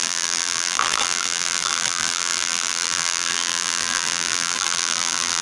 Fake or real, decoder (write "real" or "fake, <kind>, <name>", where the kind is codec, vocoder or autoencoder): fake, vocoder, BigVGAN v2